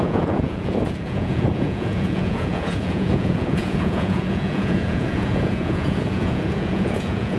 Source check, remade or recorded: remade